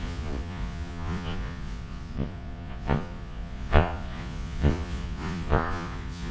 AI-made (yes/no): yes